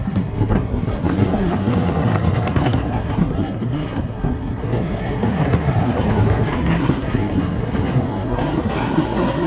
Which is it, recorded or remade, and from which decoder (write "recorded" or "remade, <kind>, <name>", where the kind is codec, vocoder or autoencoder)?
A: remade, codec, SNAC